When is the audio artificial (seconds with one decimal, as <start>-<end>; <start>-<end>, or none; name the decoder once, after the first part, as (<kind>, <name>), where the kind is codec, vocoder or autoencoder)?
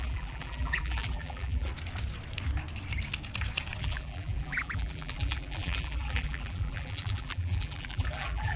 0.0-1.7 (vocoder, BigVGAN v2); 3.8-8.6